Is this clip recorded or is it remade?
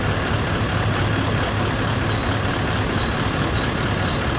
recorded